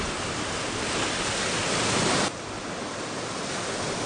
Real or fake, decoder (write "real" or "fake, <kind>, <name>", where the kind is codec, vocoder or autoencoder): real